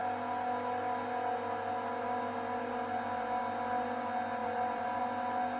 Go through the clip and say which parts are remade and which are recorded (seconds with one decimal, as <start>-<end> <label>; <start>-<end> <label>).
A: 0.0-4.4 recorded; 4.4-5.0 remade; 5.0-5.6 recorded